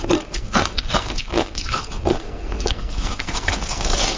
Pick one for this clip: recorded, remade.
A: remade